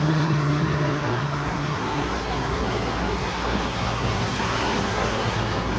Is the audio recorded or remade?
remade